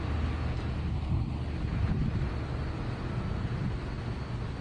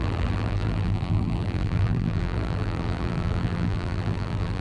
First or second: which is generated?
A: second